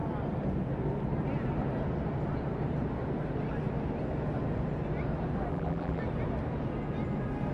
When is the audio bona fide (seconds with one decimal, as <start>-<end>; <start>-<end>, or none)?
0.0-5.5; 6.0-7.5

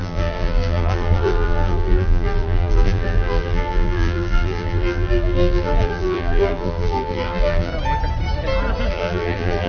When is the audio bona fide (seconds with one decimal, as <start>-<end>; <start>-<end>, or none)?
7.7-8.9

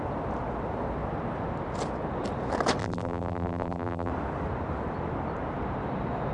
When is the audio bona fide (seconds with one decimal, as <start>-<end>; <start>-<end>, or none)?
0.0-2.8; 4.1-6.3

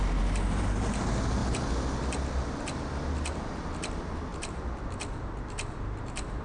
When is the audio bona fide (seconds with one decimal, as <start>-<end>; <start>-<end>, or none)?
0.0-1.4; 2.6-4.3

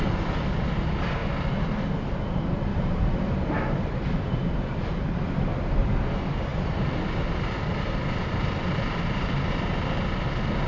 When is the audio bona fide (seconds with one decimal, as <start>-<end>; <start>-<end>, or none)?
0.0-2.7; 6.0-6.5; 9.5-10.7